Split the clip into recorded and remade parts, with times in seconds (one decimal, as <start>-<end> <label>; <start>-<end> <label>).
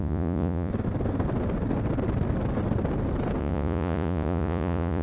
0.0-0.7 remade; 0.7-3.4 recorded; 3.4-5.0 remade